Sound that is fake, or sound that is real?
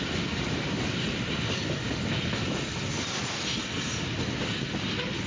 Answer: real